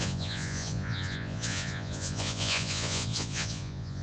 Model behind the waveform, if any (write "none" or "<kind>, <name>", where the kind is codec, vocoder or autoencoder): vocoder, Vocos